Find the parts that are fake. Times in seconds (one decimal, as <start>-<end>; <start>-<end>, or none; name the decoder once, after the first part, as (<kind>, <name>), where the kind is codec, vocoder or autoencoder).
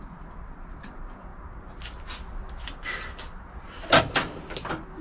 none